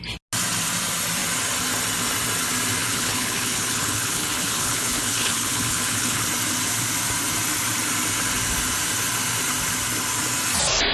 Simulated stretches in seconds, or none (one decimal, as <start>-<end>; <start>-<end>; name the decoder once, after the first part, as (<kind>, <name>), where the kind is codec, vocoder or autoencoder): 2.8-6.2 (codec, HILCodec)